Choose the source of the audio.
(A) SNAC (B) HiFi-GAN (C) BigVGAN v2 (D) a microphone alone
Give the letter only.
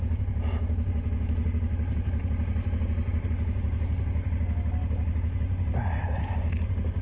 D